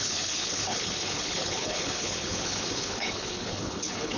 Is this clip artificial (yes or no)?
yes